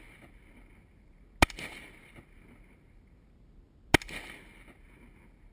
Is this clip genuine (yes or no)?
yes